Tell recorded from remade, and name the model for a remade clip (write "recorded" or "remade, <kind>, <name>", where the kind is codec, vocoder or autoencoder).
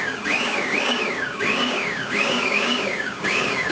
remade, codec, DAC